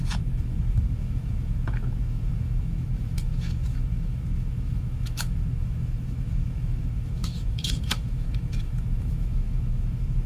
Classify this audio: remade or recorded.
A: remade